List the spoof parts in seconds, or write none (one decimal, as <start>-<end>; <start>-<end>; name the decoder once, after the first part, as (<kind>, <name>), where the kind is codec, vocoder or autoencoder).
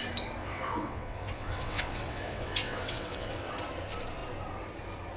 0.4-3.5 (vocoder, WaveNeXt)